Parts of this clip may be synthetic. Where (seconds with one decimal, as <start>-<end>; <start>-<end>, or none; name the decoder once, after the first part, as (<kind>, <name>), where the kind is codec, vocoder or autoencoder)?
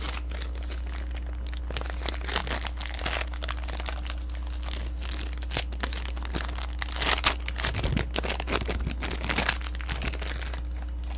none